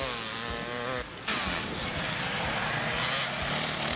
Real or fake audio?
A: real